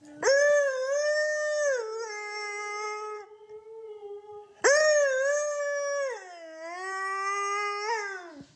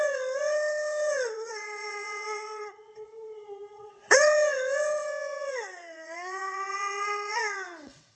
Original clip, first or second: first